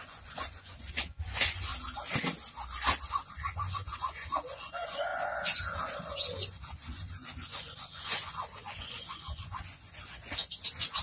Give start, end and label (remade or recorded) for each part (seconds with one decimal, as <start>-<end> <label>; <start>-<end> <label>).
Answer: 0.0-1.7 remade; 1.7-3.1 recorded; 3.1-11.0 remade